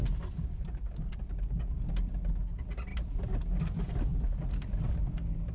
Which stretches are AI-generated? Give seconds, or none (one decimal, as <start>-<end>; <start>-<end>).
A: none